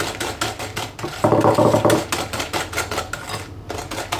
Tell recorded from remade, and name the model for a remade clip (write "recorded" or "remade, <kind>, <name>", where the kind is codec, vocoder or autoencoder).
recorded